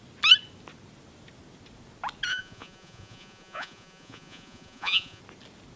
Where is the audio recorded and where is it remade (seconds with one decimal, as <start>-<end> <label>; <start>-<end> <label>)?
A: 0.0-2.3 recorded; 2.3-5.2 remade; 5.2-5.8 recorded